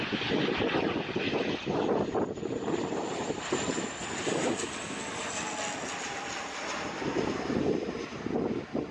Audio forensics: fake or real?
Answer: real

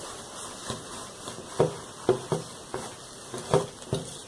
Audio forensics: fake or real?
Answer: real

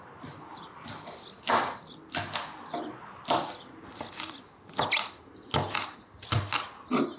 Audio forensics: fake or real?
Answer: real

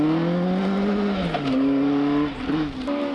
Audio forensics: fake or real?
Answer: real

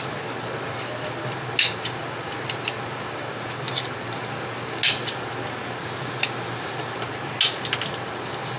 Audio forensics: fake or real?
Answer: real